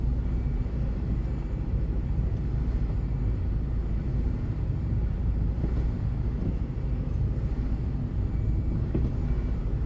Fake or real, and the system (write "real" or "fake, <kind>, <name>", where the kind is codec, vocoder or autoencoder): fake, vocoder, BigVGAN v2